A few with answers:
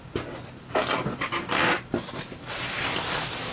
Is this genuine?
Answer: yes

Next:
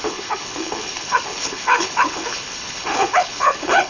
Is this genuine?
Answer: no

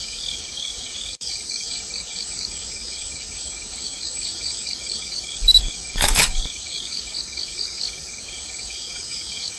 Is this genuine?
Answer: no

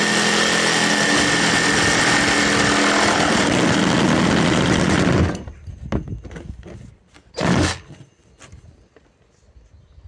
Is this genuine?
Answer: yes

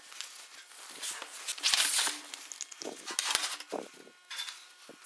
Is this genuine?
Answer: yes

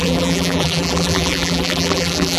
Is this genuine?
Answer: no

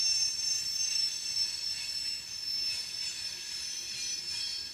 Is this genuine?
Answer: yes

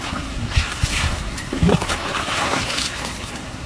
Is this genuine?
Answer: no